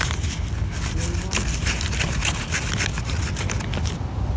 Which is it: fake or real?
real